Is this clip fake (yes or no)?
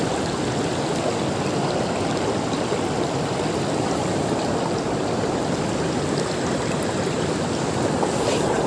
no